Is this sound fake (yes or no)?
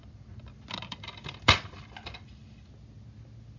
no